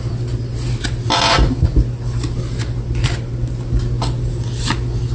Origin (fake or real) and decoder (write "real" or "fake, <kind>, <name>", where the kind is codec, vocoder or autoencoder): real